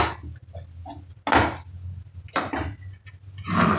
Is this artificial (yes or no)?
no